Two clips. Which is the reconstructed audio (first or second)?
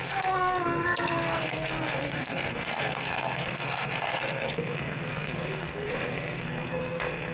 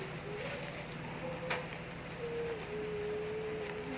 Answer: first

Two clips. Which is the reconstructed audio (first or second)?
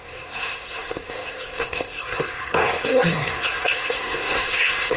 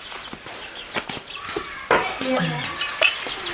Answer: first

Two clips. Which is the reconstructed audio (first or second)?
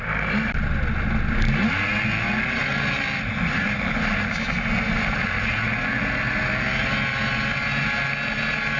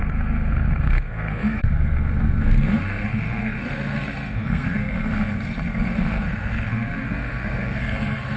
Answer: second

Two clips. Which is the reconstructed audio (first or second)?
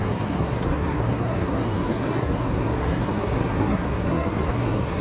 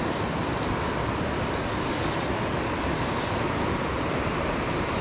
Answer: first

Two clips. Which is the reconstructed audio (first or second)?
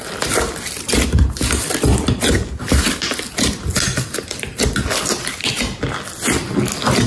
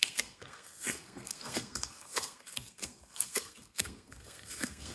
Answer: second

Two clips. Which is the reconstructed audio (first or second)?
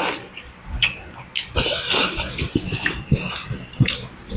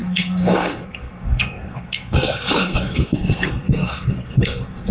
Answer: second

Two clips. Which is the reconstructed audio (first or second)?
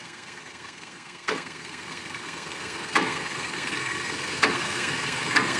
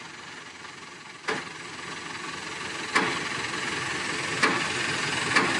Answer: first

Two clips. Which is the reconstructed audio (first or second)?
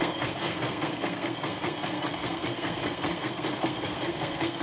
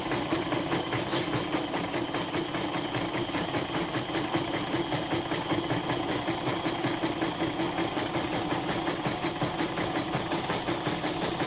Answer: first